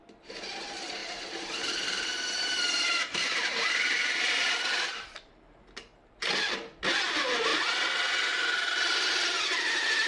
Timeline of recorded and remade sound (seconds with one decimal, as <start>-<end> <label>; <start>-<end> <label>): 0.0-1.0 recorded; 1.0-5.6 remade; 5.6-10.1 recorded